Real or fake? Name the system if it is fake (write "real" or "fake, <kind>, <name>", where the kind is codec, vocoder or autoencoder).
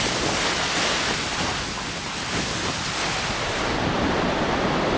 real